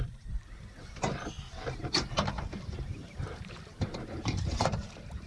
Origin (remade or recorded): remade